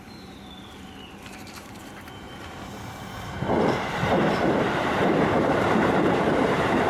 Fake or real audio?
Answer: fake